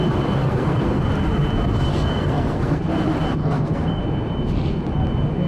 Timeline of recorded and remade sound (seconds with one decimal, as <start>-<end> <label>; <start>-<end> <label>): 0.0-0.4 recorded; 0.4-1.0 remade; 1.0-1.9 recorded; 1.9-2.8 remade; 2.8-3.4 recorded; 3.4-4.0 remade; 4.0-5.5 recorded